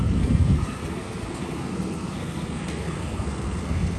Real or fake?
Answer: fake